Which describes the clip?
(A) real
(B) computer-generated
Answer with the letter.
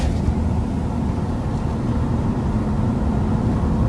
A